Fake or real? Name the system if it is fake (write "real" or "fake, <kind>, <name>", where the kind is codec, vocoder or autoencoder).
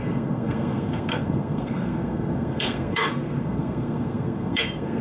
fake, codec, SNAC